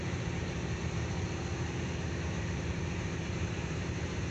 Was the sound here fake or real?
fake